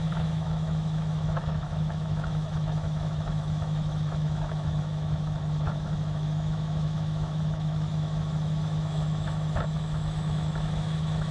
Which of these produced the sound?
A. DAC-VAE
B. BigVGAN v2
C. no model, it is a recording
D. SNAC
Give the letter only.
A